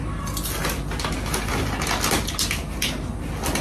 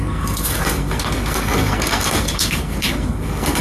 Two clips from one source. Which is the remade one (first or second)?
second